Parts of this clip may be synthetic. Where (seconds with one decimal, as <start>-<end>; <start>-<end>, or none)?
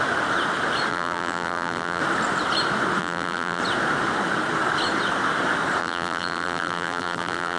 0.9-2.0; 3.0-3.6; 5.8-7.6